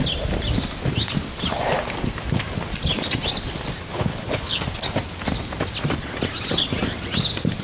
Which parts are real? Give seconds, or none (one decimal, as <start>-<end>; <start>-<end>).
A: 0.0-3.9; 4.6-7.6